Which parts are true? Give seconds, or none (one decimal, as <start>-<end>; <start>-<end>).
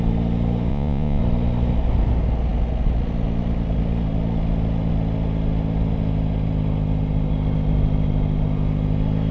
0.0-0.7; 1.2-9.3